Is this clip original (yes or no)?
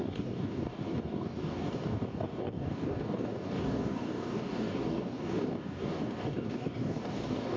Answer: no